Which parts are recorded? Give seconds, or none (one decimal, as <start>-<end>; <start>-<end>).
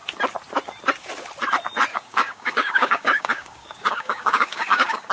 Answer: 0.0-1.9